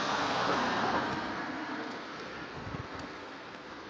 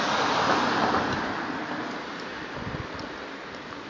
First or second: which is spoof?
first